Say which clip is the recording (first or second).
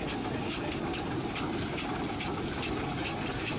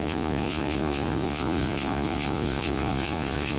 first